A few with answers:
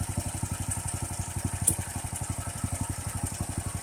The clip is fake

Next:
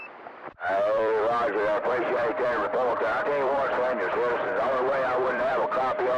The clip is fake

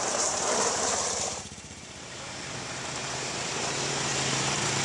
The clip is fake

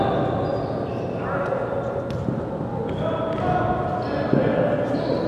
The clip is real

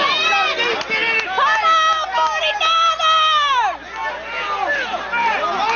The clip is real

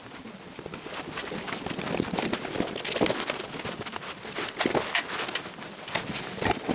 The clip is real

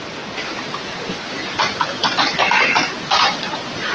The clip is fake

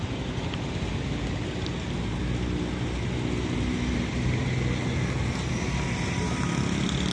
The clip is real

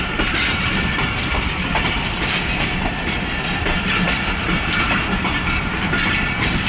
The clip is fake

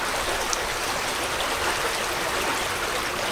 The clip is real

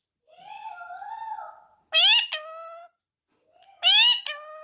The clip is real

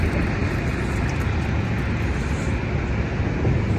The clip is real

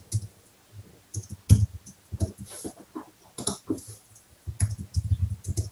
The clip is real